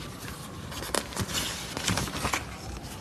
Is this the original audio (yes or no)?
yes